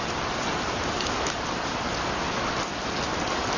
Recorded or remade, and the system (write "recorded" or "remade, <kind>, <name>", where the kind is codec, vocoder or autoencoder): recorded